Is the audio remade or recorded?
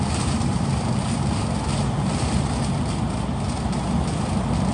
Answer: recorded